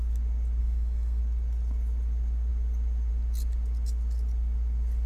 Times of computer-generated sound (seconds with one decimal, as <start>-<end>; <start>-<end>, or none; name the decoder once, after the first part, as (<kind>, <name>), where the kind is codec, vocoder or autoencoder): 0.6-1.2 (codec, SNAC)